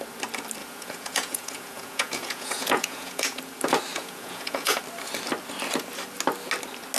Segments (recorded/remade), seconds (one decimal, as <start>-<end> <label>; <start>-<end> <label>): 0.0-0.6 recorded; 0.6-3.4 remade; 3.4-3.9 recorded; 3.9-4.8 remade; 4.8-7.0 recorded